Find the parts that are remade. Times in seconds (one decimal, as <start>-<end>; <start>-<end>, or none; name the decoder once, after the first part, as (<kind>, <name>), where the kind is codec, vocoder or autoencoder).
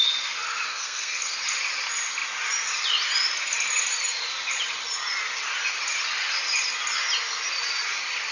0.7-1.3 (codec, SNAC)